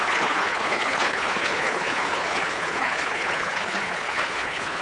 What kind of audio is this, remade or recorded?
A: remade